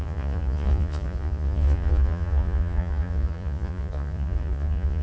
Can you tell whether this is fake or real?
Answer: fake